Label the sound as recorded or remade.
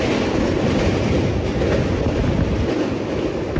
recorded